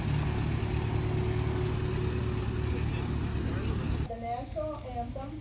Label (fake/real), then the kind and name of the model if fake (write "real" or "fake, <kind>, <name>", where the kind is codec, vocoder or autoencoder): real